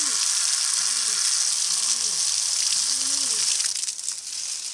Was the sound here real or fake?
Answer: real